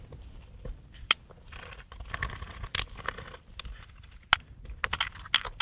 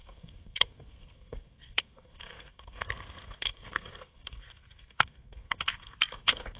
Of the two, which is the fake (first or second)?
second